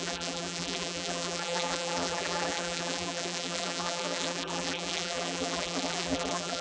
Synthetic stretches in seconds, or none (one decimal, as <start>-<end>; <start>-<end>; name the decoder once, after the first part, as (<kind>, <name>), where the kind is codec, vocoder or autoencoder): 0.0-6.6 (vocoder, BigVGAN v2)